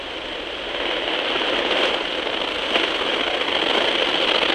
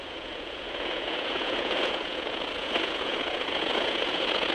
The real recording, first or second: first